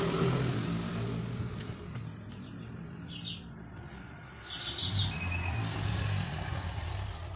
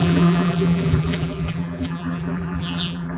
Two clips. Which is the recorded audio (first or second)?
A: first